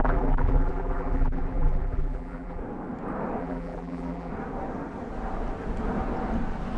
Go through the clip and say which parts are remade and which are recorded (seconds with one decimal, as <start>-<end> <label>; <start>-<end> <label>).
0.0-2.6 remade; 2.6-3.4 recorded; 3.4-4.3 remade; 4.3-6.8 recorded